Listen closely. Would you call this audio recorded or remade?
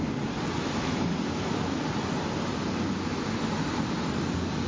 recorded